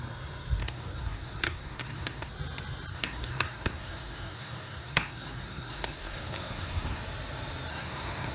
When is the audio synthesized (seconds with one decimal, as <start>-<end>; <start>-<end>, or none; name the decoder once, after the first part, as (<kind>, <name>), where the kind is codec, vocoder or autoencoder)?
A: 0.6-2.3 (codec, SNAC); 2.9-7.0; 7.7-8.3